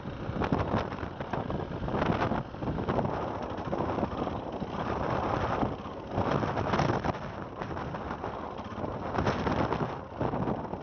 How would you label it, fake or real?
real